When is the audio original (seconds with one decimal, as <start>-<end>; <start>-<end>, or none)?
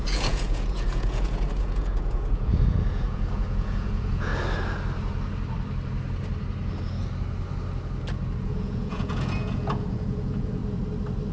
4.3-8.4; 10.6-11.3